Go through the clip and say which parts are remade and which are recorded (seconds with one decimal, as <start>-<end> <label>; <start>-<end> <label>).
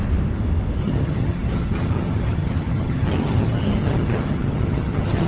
0.0-0.8 recorded; 0.8-5.3 remade